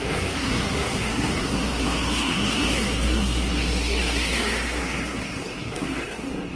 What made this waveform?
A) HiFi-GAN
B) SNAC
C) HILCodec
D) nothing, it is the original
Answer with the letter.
B